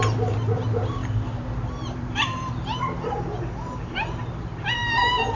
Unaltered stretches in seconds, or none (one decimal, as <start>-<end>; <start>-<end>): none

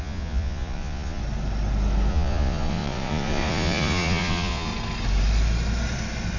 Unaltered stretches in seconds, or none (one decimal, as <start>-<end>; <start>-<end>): 1.2-2.1; 4.7-6.4

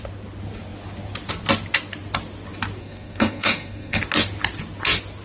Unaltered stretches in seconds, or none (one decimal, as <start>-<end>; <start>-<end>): 0.0-2.8; 4.0-5.2